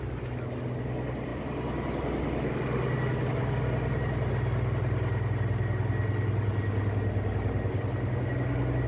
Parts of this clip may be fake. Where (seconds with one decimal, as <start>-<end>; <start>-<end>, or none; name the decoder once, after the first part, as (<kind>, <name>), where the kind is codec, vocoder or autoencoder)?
none